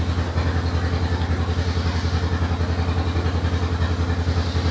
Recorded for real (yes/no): yes